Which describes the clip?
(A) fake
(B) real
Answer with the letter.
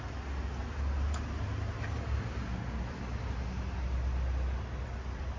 B